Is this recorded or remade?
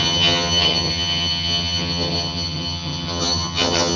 remade